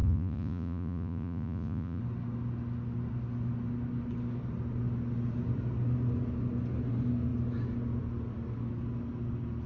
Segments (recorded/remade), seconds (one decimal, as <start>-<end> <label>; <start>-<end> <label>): 0.0-2.0 remade; 2.0-9.7 recorded